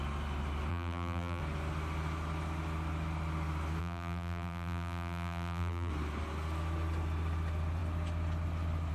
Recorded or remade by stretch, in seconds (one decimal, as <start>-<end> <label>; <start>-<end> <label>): 0.0-0.7 recorded; 0.7-1.4 remade; 1.4-3.8 recorded; 3.8-5.9 remade; 5.9-8.9 recorded

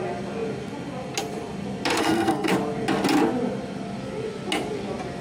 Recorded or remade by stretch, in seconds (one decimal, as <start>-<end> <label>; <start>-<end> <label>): 0.0-2.0 recorded; 2.0-2.5 remade; 2.5-5.2 recorded

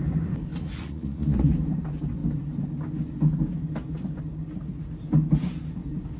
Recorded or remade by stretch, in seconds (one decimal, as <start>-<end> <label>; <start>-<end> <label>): 0.0-0.5 recorded; 0.5-1.5 remade; 1.5-6.2 recorded

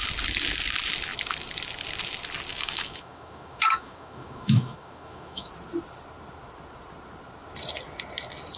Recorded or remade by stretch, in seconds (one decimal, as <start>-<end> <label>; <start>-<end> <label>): 0.0-2.5 recorded; 2.5-5.5 remade; 5.5-8.6 recorded

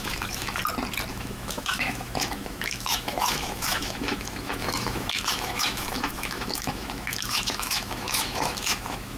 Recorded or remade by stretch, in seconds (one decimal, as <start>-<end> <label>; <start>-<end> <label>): 0.0-0.6 remade; 0.6-1.1 recorded; 1.1-9.2 remade